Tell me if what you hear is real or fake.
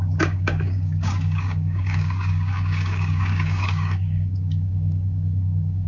fake